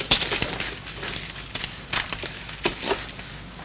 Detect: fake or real real